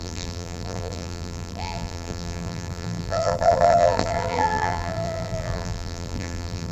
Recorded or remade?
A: remade